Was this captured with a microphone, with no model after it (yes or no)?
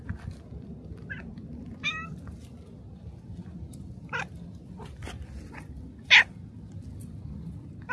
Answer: no